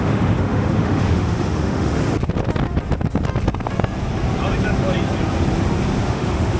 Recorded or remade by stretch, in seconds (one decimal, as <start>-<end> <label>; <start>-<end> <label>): 0.0-2.0 remade; 2.0-6.0 recorded; 6.0-6.6 remade

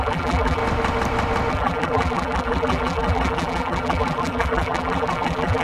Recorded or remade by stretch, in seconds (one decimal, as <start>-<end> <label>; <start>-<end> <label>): 0.0-0.6 remade; 0.6-1.5 recorded; 1.5-5.6 remade

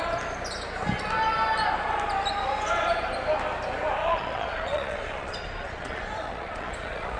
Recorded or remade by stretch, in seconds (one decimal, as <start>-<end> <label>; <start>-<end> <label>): 0.0-4.0 recorded; 4.0-7.2 remade

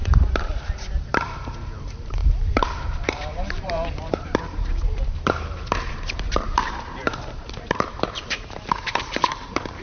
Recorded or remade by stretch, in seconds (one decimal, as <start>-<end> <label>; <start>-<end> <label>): 0.0-9.8 remade

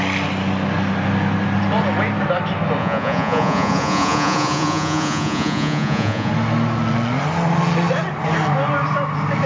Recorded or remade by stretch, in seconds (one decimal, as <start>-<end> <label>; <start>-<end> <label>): 0.0-2.8 recorded; 2.8-6.3 remade; 6.3-9.5 recorded

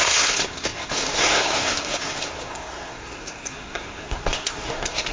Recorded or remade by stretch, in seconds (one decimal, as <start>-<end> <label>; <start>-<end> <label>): 0.0-5.1 remade

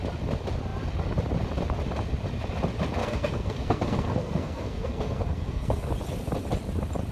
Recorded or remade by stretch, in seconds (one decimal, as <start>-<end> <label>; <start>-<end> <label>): 0.0-3.0 recorded; 3.0-5.9 remade; 5.9-7.1 recorded